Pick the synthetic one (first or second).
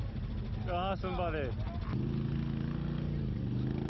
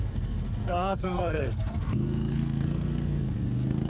second